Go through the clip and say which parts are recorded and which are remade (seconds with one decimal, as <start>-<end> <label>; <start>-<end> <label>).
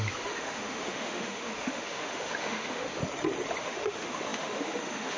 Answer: 0.0-3.0 remade; 3.0-3.6 recorded; 3.6-5.2 remade